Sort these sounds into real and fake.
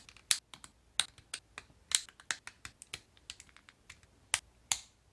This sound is real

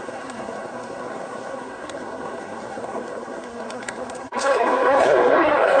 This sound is fake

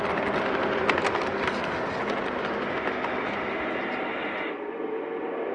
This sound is real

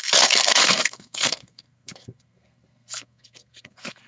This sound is fake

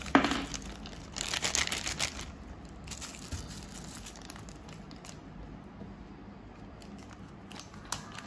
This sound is real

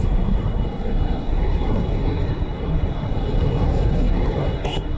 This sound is fake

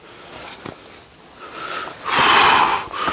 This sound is real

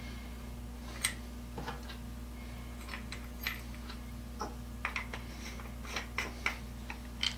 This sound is real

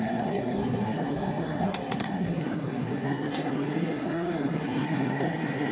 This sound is fake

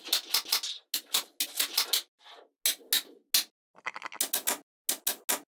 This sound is real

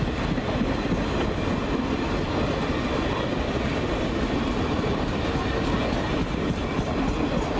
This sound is real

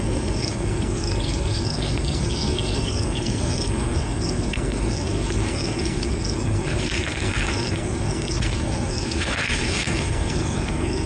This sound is fake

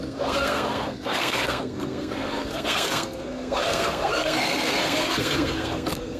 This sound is fake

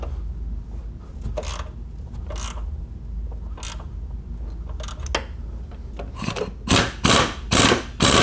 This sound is real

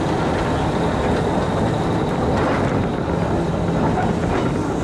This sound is real